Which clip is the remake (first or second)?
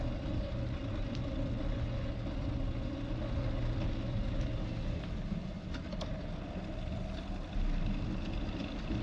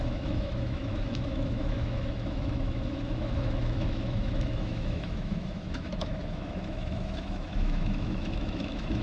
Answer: second